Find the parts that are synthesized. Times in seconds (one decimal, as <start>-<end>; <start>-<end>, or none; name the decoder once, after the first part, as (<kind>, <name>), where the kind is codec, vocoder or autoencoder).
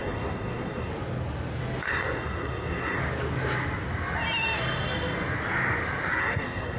0.0-0.9 (codec, SNAC); 1.8-3.0; 6.2-6.8